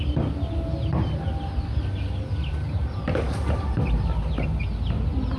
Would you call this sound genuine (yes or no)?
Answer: yes